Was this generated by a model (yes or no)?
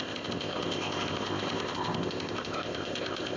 yes